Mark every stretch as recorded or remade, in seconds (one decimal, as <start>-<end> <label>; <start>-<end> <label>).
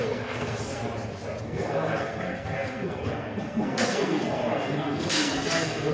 0.0-0.8 remade; 0.8-1.4 recorded; 1.4-5.9 remade